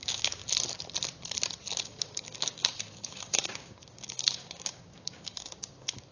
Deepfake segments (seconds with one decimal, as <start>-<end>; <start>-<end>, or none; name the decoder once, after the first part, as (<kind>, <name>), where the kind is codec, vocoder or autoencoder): 0.0-0.4 (codec, DAC); 1.8-6.1